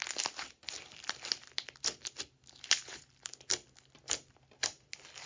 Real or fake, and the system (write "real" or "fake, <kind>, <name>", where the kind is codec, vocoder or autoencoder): real